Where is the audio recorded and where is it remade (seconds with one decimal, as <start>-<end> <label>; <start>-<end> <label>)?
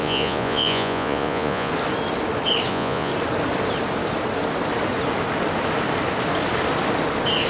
0.0-1.7 remade; 1.7-2.7 recorded; 2.7-3.1 remade; 3.1-7.5 recorded